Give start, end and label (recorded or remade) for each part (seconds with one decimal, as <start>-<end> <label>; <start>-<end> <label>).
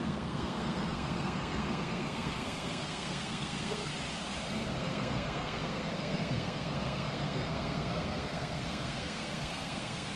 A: 0.0-3.9 remade; 3.9-4.5 recorded; 4.5-10.2 remade